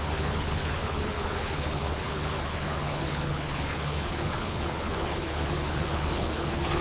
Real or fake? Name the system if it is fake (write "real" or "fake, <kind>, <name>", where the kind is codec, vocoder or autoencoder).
fake, codec, HILCodec